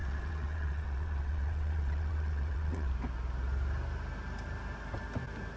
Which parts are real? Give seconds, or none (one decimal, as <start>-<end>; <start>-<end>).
2.9-5.6

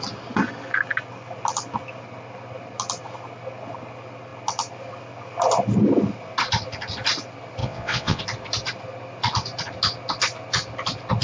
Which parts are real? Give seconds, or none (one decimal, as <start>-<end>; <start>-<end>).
0.0-7.6; 8.2-11.2